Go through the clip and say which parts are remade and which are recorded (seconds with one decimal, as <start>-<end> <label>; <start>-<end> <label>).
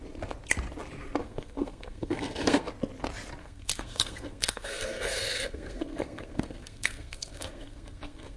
0.0-1.2 recorded; 1.2-2.7 remade; 2.7-3.4 recorded; 3.4-8.4 remade